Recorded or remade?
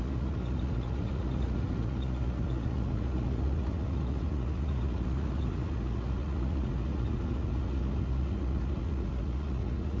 remade